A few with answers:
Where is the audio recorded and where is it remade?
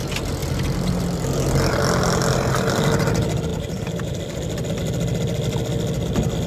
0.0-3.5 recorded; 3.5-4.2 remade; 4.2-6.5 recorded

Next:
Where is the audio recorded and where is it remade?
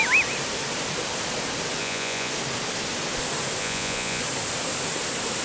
0.0-1.8 recorded; 1.8-2.3 remade; 2.3-3.6 recorded; 3.6-4.2 remade; 4.2-5.4 recorded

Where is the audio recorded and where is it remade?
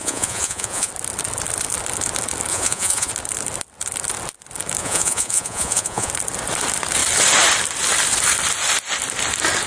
0.0-0.9 remade; 0.9-2.5 recorded; 2.5-3.1 remade; 3.1-4.8 recorded; 4.8-6.1 remade; 6.1-9.7 recorded